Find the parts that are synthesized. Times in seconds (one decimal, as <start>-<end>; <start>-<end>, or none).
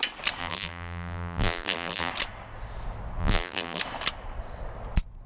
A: 0.4-2.1; 3.2-3.8